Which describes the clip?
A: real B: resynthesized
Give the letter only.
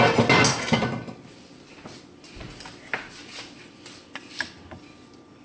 A